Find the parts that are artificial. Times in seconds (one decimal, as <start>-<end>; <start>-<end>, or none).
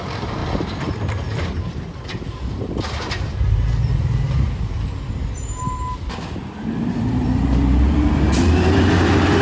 0.0-0.4; 1.5-5.2; 6.6-9.4